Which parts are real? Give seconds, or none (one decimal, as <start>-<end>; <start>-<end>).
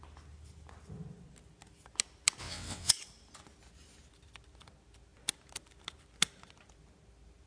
0.0-2.4; 2.9-7.5